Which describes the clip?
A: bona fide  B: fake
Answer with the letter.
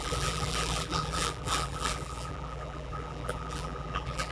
B